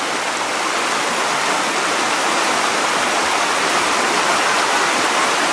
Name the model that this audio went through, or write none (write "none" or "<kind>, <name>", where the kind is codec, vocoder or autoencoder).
none